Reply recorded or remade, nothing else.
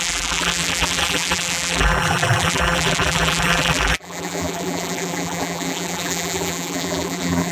remade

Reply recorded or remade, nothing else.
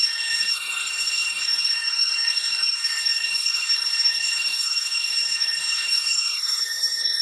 remade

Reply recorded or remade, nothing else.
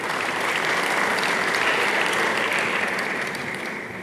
remade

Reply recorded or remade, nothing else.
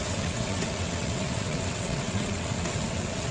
remade